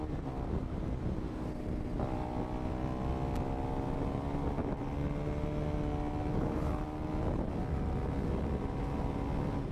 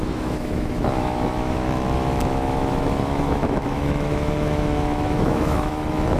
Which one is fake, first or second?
second